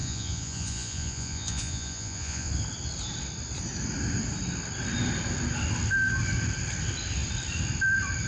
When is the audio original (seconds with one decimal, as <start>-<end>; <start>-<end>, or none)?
2.5-8.3